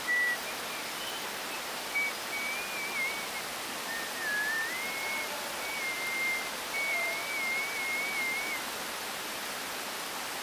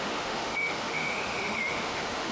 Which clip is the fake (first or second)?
second